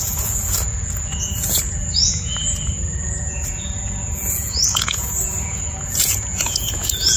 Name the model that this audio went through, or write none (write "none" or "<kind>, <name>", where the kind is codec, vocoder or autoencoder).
vocoder, Vocos